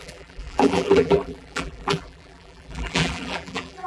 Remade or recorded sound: remade